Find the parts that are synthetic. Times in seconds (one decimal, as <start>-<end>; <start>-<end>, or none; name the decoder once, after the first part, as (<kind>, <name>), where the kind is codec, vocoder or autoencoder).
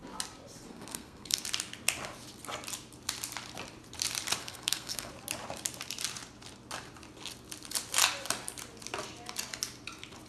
0.7-1.4 (codec, SNAC); 4.4-5.1